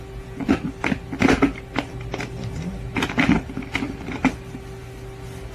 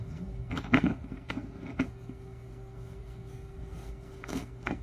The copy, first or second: second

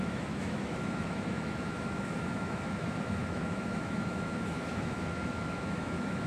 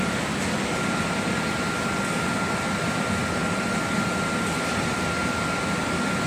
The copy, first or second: first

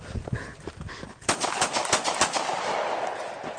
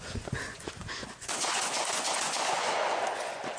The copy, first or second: second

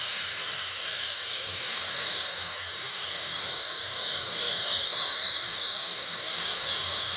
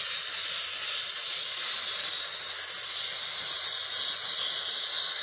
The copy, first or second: first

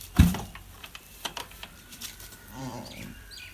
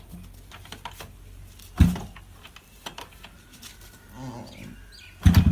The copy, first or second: first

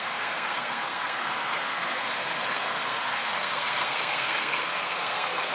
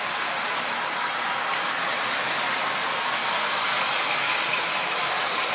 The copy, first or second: first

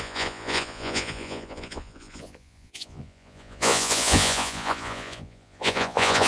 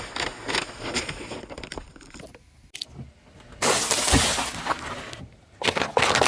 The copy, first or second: first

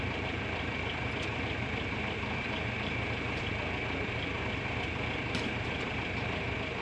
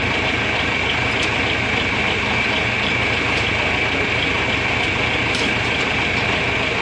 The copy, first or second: first